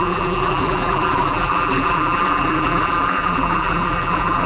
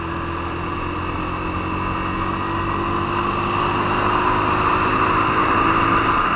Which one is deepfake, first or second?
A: first